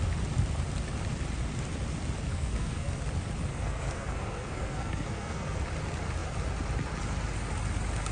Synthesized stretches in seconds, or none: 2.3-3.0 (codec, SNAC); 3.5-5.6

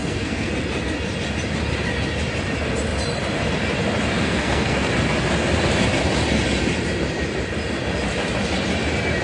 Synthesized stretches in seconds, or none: 0.0-0.5 (codec, SNAC); 4.2-4.9

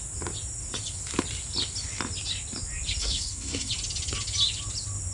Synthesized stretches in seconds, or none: 3.0-3.7 (codec, SNAC)

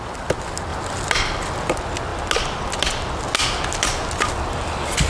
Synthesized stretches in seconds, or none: none